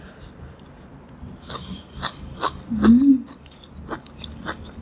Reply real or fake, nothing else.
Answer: real